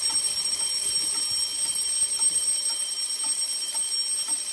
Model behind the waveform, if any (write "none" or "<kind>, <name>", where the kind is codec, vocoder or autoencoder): none